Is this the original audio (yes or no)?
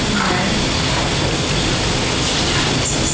yes